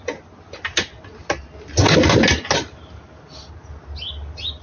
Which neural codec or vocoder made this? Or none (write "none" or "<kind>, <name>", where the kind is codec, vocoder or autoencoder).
none